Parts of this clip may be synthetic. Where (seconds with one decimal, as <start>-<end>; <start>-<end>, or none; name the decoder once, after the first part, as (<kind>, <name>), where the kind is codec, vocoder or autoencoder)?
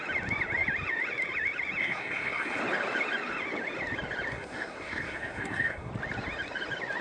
1.8-2.6 (codec, SNAC); 4.3-5.9